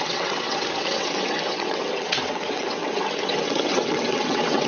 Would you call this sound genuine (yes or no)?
no